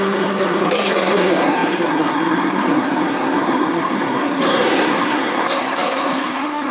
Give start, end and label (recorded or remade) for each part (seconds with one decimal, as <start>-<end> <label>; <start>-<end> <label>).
0.0-6.7 remade